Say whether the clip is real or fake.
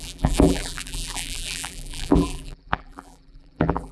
fake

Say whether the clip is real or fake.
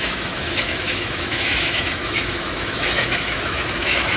fake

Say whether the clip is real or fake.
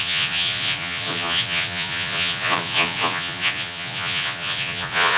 fake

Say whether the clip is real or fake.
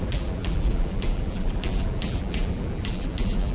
fake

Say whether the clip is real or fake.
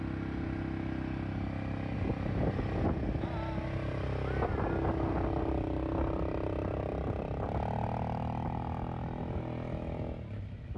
real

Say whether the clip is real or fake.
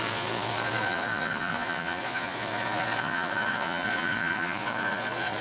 fake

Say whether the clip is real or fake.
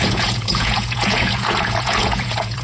fake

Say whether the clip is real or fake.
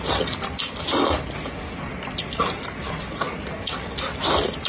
fake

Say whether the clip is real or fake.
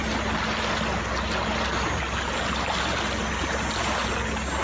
real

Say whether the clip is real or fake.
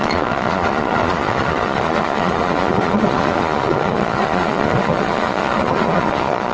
fake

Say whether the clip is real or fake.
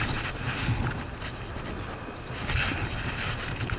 real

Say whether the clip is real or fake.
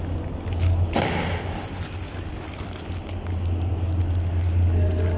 real